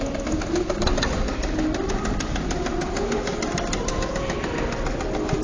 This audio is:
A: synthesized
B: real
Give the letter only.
B